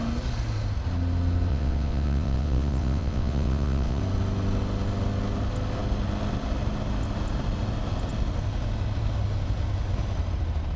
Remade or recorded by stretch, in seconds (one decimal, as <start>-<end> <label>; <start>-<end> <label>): 0.0-1.5 recorded; 1.5-4.0 remade; 4.0-10.8 recorded